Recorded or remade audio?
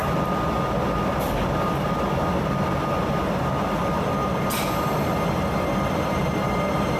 recorded